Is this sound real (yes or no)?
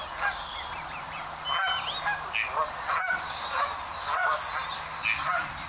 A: yes